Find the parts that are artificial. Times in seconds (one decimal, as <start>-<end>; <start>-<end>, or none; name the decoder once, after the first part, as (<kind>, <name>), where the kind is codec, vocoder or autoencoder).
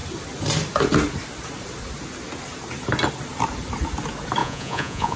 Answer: 4.4-5.2 (vocoder, Vocos)